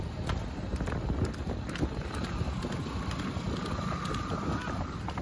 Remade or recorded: recorded